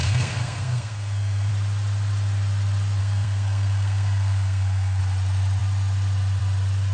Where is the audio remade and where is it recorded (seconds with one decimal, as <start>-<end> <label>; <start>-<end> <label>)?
0.0-1.5 remade; 1.5-3.0 recorded; 3.0-5.0 remade; 5.0-6.9 recorded